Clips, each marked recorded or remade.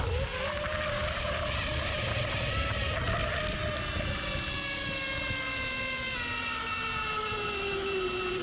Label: recorded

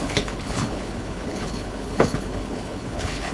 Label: remade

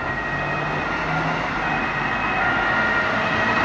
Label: recorded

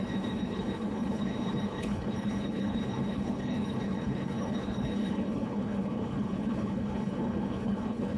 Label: remade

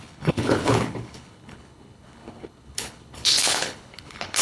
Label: remade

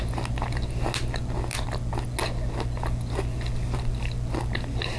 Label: recorded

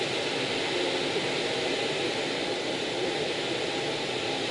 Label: recorded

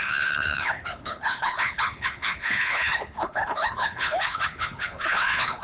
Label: remade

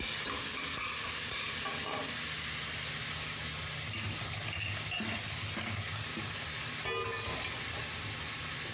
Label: recorded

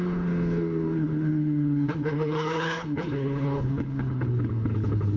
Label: remade